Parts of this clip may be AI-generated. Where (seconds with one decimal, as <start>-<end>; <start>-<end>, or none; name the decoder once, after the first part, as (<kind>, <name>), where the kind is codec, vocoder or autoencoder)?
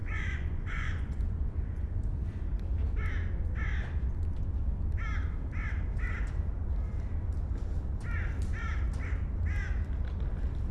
0.0-2.2 (vocoder, Vocos)